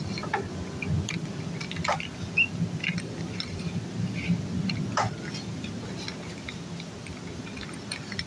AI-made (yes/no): no